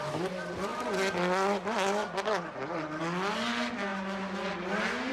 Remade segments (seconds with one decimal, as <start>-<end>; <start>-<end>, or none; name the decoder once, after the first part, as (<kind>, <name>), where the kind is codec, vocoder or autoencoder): none